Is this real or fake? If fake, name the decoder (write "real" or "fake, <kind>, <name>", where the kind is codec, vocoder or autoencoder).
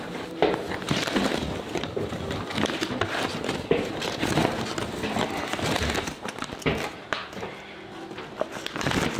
real